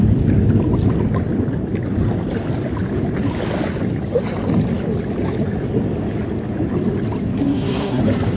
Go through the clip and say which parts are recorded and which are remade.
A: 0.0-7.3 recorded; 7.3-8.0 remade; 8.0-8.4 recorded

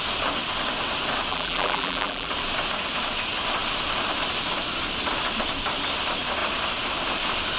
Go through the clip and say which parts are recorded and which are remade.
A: 0.0-1.3 recorded; 1.3-2.3 remade; 2.3-7.6 recorded